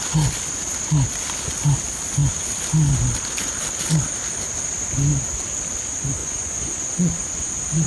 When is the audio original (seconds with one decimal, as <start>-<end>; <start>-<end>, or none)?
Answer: 0.0-6.2; 7.5-7.9